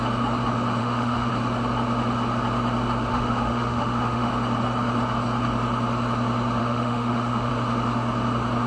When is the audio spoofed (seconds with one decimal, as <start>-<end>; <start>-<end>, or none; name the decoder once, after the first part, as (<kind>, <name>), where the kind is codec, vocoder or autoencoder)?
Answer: 0.8-1.3 (autoencoder, DAC-VAE); 3.1-4.3; 6.6-7.5